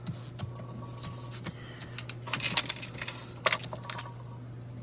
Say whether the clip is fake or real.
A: real